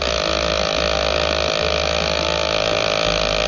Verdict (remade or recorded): recorded